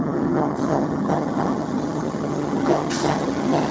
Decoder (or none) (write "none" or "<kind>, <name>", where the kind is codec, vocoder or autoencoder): vocoder, HiFi-GAN